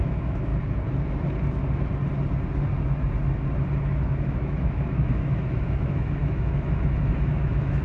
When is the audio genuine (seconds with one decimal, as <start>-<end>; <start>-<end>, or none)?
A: 0.5-4.1